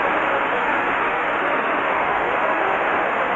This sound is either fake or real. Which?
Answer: fake